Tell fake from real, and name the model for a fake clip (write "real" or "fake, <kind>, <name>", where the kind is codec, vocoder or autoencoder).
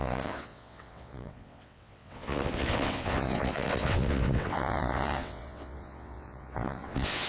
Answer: fake, vocoder, WaveNeXt